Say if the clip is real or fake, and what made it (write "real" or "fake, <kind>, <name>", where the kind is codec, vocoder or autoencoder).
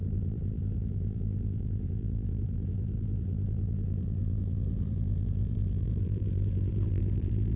fake, vocoder, BigVGAN v2